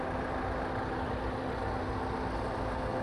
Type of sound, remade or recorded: recorded